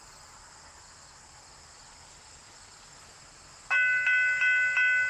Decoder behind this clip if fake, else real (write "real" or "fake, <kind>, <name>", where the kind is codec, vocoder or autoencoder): real